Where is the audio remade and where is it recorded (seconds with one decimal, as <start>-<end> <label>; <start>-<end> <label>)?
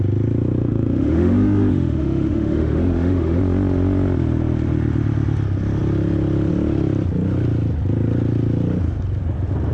0.0-0.6 recorded; 0.6-3.4 remade; 3.4-9.7 recorded